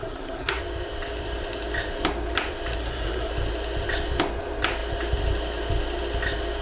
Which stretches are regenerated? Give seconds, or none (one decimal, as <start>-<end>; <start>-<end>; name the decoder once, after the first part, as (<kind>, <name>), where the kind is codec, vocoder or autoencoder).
0.0-0.6 (codec, SNAC); 2.8-3.3

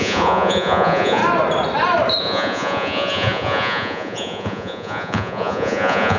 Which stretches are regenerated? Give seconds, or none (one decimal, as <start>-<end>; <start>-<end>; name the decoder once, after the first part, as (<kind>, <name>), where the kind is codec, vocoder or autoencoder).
0.0-1.2 (vocoder, Vocos); 2.2-6.2

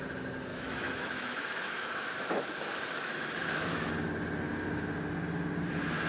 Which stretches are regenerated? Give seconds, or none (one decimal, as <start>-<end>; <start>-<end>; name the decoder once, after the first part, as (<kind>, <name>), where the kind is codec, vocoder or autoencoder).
0.5-3.9 (autoencoder, DAC-VAE)

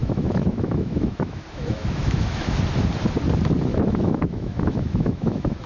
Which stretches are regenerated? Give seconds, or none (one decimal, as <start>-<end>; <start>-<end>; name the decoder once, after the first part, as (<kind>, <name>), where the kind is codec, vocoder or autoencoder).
0.0-2.6 (autoencoder, DAC-VAE); 3.7-5.7

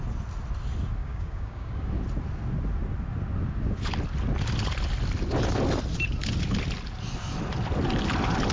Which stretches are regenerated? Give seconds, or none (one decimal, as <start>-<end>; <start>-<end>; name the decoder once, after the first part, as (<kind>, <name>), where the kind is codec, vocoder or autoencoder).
1.0-1.9 (codec, DAC)

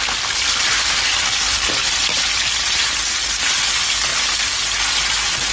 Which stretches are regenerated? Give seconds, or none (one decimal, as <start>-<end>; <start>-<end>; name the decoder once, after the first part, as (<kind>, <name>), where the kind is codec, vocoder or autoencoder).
none